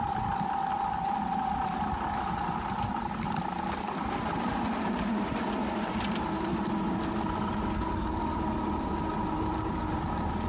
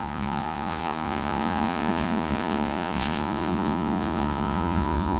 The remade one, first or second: second